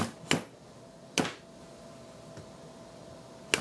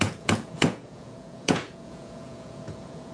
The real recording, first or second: first